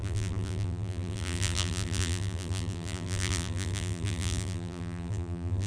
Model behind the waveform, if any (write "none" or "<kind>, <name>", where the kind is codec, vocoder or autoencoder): vocoder, BigVGAN v2